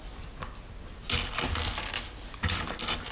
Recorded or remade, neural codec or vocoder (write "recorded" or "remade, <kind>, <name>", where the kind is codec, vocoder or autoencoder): recorded